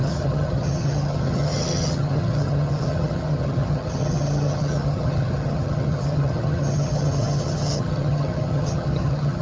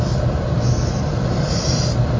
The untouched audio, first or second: second